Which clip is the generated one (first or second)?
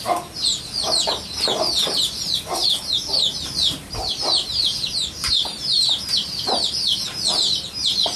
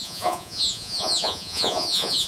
second